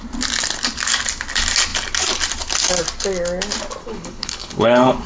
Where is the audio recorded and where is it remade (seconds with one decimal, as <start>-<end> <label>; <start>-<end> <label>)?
0.0-3.8 recorded; 3.8-5.1 remade